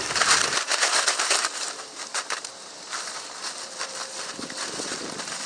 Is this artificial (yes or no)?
yes